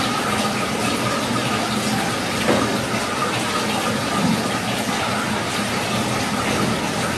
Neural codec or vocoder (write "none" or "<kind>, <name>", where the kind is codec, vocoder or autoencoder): none